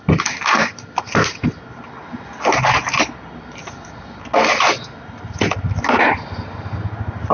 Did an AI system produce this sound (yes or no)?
no